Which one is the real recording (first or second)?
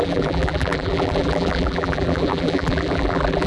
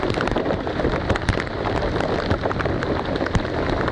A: second